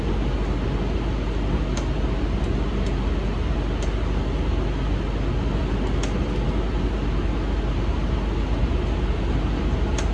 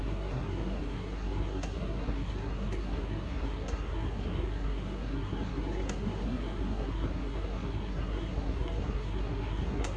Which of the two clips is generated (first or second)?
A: second